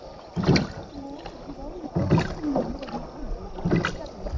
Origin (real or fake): real